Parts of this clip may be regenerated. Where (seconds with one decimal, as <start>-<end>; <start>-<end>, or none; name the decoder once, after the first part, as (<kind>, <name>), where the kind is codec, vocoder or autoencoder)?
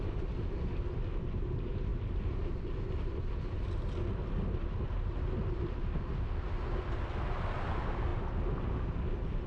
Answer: none